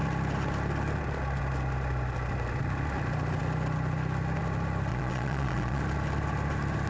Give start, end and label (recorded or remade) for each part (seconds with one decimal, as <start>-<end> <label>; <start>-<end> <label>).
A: 0.0-4.9 recorded; 4.9-5.8 remade; 5.8-6.9 recorded

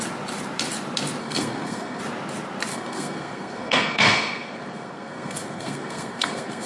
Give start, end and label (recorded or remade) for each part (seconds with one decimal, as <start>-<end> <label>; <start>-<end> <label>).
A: 0.0-1.2 recorded; 1.2-2.0 remade; 2.0-2.7 recorded; 2.7-6.7 remade

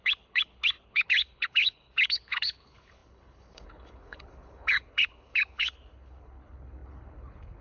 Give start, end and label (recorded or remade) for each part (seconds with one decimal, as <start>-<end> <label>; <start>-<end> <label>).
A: 0.0-7.6 remade